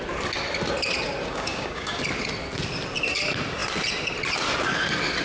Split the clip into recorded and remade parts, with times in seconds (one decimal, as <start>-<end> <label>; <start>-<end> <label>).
0.0-1.2 recorded; 1.2-2.0 remade; 2.0-5.2 recorded

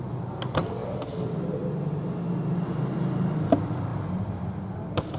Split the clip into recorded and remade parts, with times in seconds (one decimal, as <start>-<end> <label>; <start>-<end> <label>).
0.0-5.2 recorded